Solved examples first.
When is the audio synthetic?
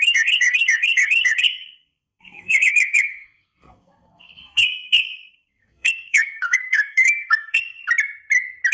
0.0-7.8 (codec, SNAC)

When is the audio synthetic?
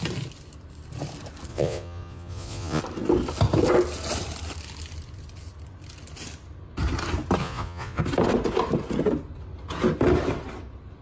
1.5-2.8 (vocoder, Vocos); 7.4-8.0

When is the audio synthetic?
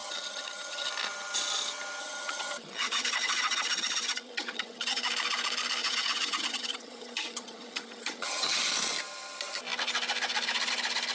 0.0-0.9 (vocoder, HiFi-GAN); 2.0-5.1; 5.8-8.7